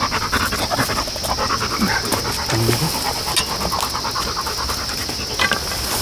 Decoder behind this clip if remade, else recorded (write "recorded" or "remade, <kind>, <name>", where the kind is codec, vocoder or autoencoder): recorded